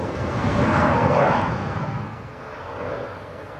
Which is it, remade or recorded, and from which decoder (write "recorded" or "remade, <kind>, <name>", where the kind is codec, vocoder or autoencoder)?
remade, codec, SNAC